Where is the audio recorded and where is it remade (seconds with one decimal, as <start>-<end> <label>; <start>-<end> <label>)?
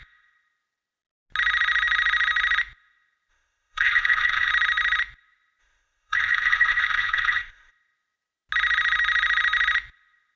0.0-3.3 recorded; 3.3-4.5 remade; 4.5-5.6 recorded; 5.6-7.7 remade; 7.7-10.4 recorded